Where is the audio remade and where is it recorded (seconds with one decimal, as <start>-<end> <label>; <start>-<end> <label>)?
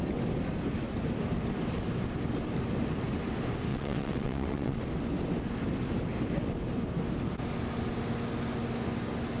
0.0-3.7 recorded; 3.7-4.8 remade; 4.8-9.4 recorded